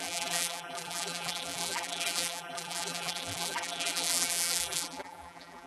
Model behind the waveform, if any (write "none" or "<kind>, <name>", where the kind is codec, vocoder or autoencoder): vocoder, BigVGAN v2